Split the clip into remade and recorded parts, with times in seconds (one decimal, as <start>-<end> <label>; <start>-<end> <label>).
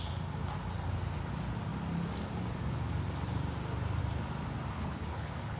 0.0-4.7 recorded; 4.7-5.6 remade